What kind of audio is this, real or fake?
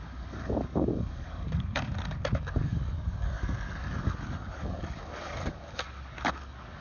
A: fake